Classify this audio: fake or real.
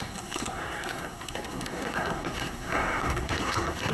fake